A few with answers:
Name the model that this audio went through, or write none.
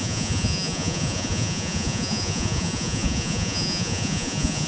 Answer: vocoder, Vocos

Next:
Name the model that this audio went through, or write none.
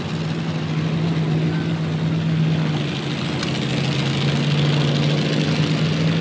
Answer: none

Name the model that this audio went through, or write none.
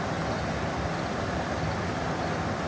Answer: none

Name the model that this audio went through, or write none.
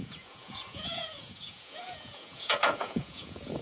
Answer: vocoder, Vocos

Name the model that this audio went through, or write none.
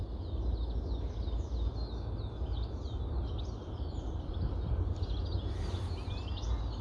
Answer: none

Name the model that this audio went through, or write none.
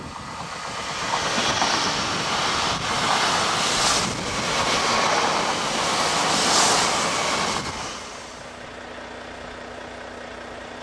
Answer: none